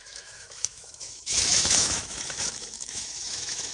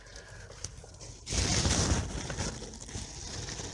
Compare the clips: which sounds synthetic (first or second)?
first